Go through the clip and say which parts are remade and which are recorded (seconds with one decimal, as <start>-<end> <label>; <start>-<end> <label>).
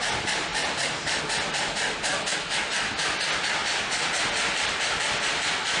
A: 0.0-0.5 recorded; 0.5-1.2 remade; 1.2-3.6 recorded; 3.6-4.9 remade; 4.9-5.8 recorded